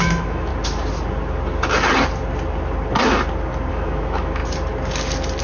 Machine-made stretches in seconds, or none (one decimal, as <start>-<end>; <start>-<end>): 0.0-0.5; 3.7-4.4

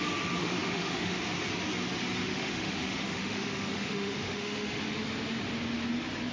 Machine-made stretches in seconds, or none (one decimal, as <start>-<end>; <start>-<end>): 0.4-1.2; 2.3-4.8

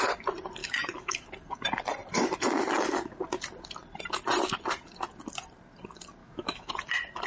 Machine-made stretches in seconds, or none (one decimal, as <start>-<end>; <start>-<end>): 0.6-1.3; 6.2-6.7